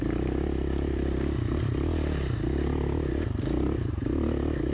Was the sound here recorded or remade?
recorded